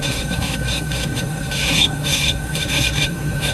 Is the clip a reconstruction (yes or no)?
yes